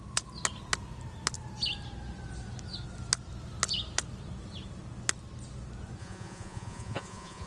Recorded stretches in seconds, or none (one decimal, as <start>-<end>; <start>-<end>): 0.0-6.0